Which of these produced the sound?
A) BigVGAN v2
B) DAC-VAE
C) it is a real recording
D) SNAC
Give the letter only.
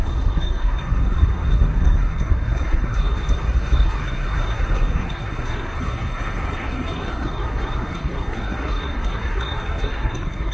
D